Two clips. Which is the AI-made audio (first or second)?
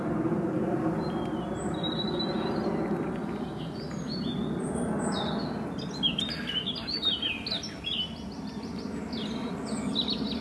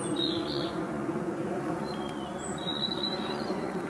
second